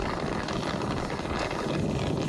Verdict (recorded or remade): recorded